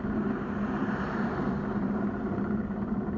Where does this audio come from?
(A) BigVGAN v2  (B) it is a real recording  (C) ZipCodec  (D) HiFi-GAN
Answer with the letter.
B